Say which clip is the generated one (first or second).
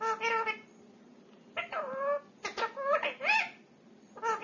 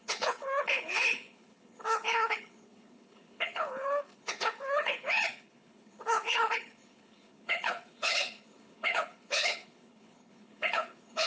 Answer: second